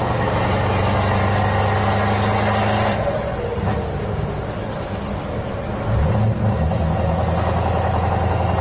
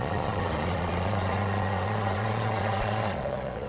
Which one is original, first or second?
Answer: first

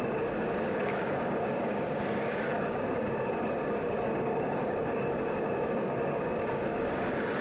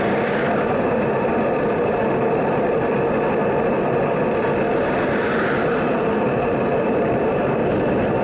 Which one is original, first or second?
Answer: second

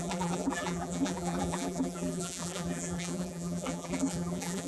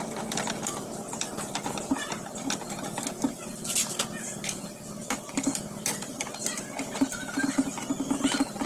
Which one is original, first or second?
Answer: second